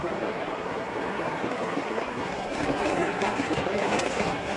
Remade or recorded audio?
remade